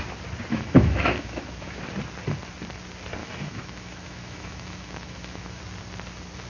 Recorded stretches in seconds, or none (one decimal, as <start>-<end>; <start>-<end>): 0.0-0.5; 1.8-3.2; 5.6-6.5